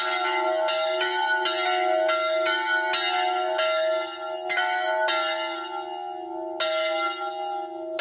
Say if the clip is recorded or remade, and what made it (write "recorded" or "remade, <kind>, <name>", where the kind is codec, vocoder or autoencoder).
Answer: recorded